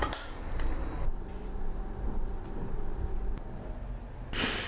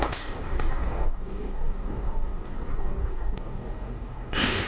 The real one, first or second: first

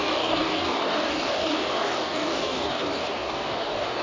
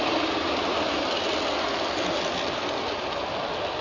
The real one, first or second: second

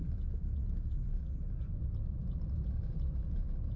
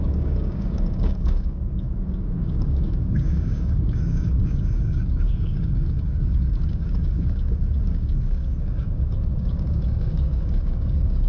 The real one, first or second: first